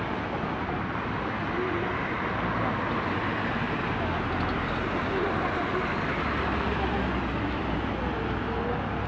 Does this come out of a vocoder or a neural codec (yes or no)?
no